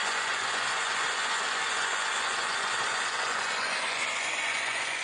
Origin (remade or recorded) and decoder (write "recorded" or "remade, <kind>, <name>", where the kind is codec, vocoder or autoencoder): remade, vocoder, Vocos